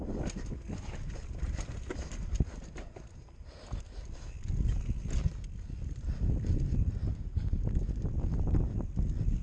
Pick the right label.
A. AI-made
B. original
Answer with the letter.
B